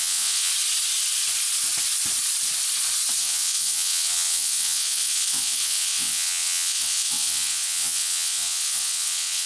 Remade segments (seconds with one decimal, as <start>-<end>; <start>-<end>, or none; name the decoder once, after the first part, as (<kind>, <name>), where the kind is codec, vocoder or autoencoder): 0.0-0.5 (vocoder, WaveNeXt); 3.2-9.5